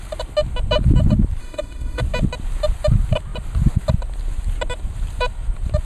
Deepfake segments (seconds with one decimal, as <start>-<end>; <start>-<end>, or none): 1.4-2.0